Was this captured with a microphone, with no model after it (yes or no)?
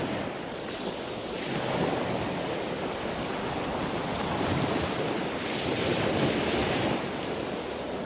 yes